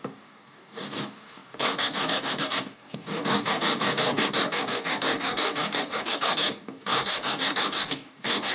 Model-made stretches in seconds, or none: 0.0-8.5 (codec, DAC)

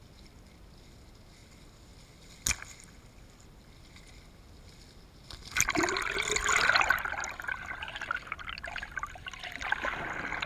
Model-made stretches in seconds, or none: none

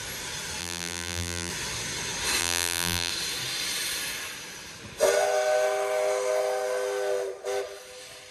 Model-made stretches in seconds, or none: 0.6-1.5 (vocoder, BigVGAN v2); 2.4-3.1

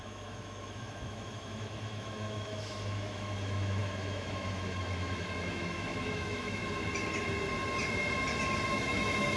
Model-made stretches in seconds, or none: 0.0-6.6 (autoencoder, DAC-VAE); 8.7-9.4

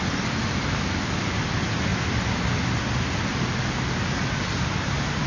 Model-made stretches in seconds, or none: none